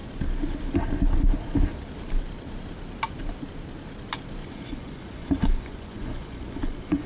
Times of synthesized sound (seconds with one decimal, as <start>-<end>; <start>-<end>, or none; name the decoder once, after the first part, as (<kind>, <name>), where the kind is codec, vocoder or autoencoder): 4.4-7.1 (vocoder, Vocos)